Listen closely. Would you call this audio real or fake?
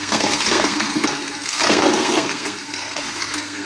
fake